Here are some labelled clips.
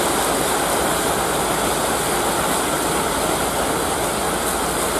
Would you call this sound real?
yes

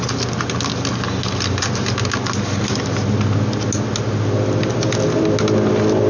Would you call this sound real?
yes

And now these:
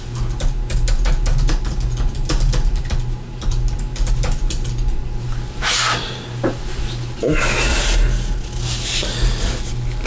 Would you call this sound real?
yes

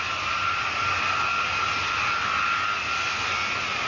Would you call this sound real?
yes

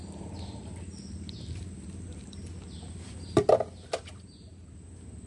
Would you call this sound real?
yes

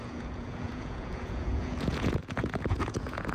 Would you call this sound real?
no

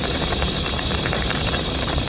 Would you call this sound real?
no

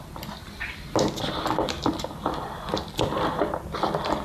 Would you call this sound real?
yes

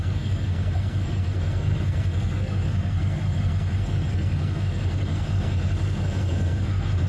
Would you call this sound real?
no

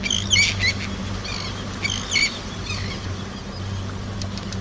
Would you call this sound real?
yes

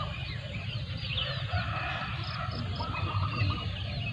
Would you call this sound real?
no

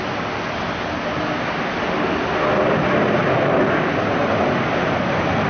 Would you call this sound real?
yes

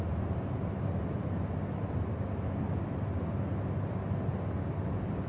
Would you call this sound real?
yes